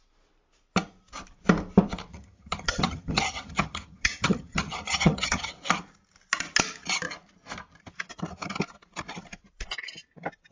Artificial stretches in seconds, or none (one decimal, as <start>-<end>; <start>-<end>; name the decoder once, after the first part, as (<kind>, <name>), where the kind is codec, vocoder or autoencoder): 2.1-5.5 (vocoder, HiFi-GAN)